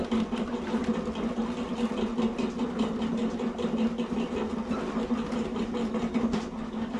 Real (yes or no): yes